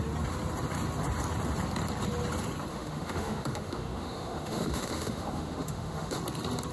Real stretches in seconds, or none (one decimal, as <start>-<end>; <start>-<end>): 0.0-2.7; 6.2-6.7